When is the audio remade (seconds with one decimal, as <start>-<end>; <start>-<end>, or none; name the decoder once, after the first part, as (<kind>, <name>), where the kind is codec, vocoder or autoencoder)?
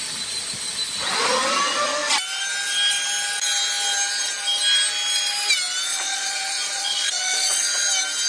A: 5.9-7.9 (vocoder, Vocos)